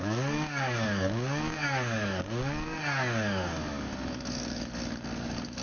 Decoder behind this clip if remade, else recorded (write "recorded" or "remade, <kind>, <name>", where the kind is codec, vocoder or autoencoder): remade, codec, DAC